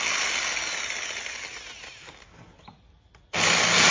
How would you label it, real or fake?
real